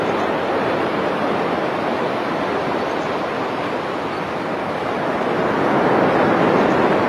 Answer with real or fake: real